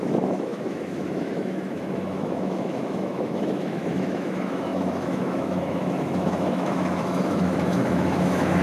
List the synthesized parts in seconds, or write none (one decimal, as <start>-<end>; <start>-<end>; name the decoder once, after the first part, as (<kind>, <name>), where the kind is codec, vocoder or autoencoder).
0.0-8.6 (autoencoder, DAC-VAE)